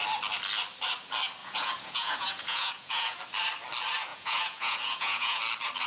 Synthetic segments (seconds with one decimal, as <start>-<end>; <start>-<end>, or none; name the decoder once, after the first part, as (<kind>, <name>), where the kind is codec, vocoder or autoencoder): 1.4-3.2 (vocoder, Vocos); 4.1-5.4